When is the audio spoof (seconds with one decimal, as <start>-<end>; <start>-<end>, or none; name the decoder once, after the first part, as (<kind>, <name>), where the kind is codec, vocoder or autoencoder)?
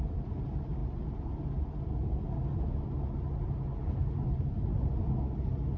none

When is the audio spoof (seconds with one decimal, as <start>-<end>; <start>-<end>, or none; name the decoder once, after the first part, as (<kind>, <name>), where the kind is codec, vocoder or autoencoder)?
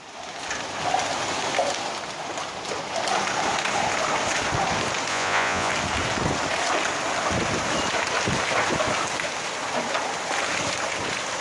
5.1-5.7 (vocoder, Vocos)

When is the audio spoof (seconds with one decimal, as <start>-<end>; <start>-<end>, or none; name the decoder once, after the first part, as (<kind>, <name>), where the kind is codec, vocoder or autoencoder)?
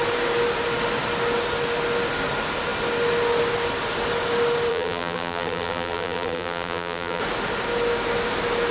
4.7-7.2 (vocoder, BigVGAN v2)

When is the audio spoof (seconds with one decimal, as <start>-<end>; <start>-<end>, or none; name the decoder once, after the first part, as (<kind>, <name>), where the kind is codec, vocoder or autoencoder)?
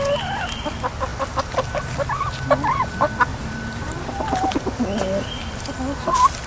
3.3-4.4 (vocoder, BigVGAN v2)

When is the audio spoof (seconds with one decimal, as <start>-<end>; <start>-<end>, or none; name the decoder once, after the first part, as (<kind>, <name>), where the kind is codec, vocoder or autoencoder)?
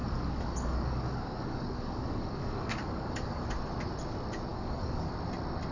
0.0-3.4 (codec, DAC); 4.5-5.1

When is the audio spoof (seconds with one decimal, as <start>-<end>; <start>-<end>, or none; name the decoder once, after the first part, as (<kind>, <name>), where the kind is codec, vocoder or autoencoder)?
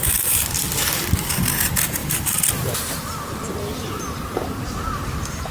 none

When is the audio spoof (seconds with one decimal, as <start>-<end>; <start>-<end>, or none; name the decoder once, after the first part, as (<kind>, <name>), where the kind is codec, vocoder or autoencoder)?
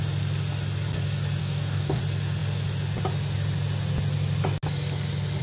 1.4-2.0 (codec, DAC)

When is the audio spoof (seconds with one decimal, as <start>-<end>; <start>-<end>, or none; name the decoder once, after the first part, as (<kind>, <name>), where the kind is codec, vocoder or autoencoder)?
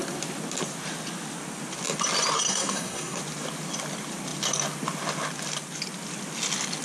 2.5-3.2 (codec, SNAC)